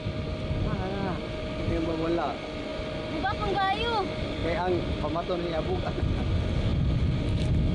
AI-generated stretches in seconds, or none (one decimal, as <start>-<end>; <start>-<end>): none